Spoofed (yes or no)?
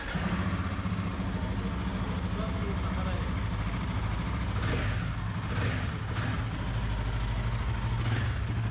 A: no